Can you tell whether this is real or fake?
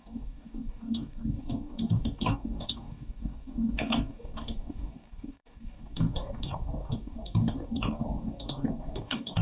fake